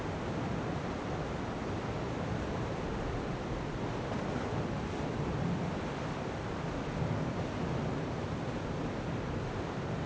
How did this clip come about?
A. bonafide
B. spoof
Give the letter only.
A